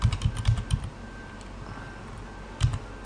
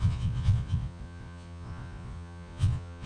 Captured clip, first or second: first